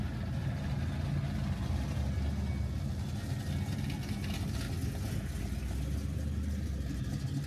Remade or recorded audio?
recorded